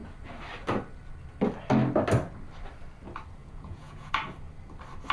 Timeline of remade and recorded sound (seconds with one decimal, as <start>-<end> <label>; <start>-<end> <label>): 0.0-3.4 recorded; 3.4-4.1 remade; 4.1-5.1 recorded